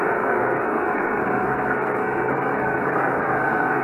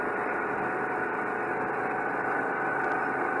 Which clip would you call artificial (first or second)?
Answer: first